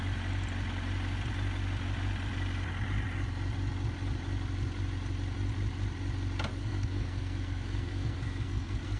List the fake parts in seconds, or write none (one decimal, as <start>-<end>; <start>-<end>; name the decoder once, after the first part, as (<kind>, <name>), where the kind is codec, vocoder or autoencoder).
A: 6.6-9.0 (codec, SNAC)